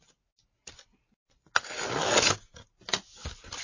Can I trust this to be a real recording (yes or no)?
yes